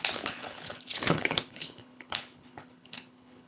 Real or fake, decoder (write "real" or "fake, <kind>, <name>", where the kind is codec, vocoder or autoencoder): fake, codec, HILCodec